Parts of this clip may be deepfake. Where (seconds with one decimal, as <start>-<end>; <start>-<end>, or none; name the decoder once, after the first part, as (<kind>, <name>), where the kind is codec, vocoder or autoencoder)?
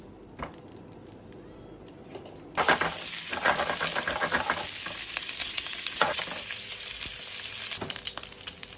5.4-6.2 (vocoder, Vocos)